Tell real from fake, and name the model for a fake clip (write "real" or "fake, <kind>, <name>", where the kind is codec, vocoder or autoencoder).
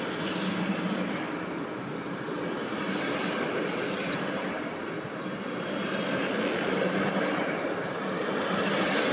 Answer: real